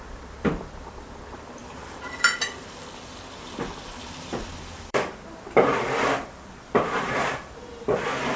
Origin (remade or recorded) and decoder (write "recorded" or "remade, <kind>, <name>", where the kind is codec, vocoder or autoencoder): remade, vocoder, BigVGAN v2